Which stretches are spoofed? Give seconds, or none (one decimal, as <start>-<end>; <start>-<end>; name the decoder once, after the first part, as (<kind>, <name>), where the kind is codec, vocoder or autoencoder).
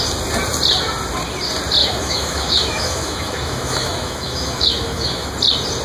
1.8-5.3 (autoencoder, DAC-VAE)